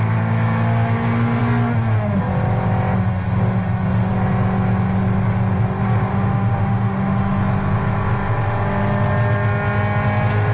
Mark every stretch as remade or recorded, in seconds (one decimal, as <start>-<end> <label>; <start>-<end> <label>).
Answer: 0.0-6.1 recorded; 6.1-7.4 remade; 7.4-10.5 recorded